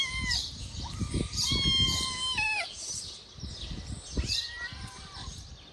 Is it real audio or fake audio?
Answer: real